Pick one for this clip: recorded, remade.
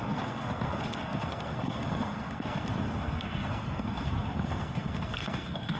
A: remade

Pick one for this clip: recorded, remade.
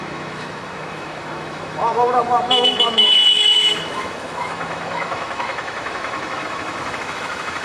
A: remade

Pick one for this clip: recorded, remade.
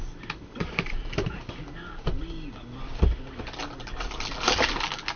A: recorded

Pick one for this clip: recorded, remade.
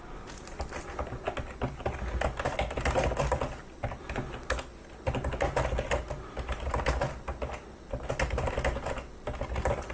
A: recorded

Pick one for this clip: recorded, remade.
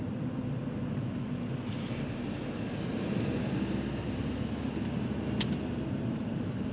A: recorded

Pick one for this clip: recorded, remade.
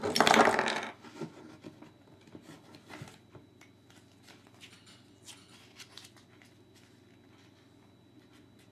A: recorded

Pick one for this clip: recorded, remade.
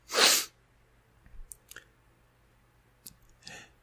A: recorded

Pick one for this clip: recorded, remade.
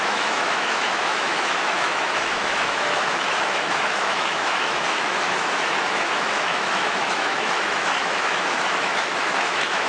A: remade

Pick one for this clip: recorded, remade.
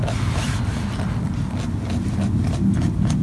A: recorded